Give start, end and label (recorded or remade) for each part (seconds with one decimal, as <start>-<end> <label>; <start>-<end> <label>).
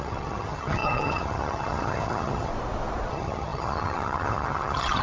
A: 0.0-2.5 remade; 2.5-3.1 recorded; 3.1-5.0 remade